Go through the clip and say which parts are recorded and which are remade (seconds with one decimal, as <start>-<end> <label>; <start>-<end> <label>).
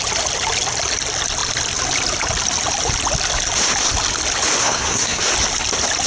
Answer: 0.0-4.6 recorded; 4.6-5.2 remade; 5.2-6.1 recorded